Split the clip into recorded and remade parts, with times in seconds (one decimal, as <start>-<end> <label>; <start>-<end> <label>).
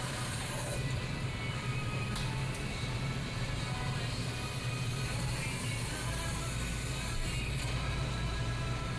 0.0-9.0 recorded